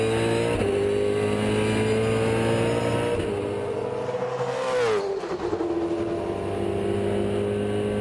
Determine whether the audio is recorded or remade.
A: recorded